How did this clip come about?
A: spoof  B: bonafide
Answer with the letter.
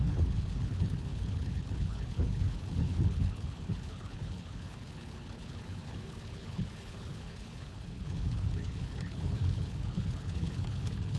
A